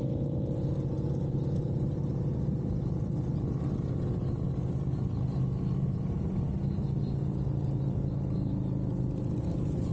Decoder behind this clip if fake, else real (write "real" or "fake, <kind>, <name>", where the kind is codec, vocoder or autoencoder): real